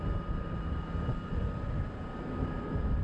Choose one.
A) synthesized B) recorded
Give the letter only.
B